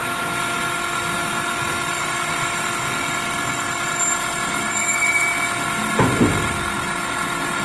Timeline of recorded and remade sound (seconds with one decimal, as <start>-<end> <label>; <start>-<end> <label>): 0.0-7.6 recorded